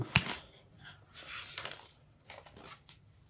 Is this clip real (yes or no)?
yes